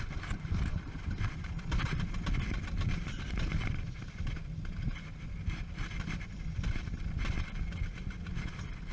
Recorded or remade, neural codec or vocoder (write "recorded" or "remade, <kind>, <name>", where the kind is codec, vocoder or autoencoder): remade, vocoder, BigVGAN v2